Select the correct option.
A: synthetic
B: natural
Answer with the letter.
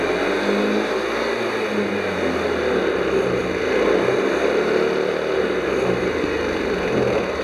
B